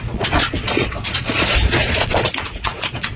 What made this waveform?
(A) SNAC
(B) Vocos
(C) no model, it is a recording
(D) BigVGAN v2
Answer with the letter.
B